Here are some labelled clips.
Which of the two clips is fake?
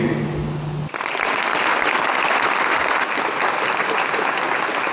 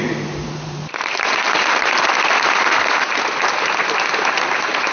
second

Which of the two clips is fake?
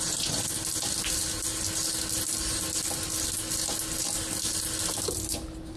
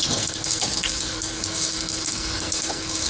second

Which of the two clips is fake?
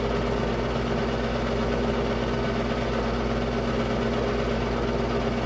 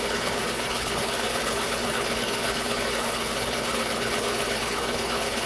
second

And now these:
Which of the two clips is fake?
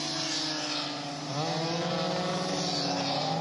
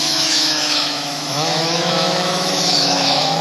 second